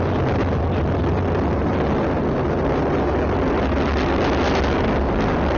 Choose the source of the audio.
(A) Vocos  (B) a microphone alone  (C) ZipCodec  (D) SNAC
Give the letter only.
B